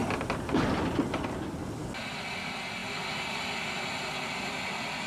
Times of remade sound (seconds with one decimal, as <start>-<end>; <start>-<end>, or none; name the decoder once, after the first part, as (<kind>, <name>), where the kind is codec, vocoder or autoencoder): none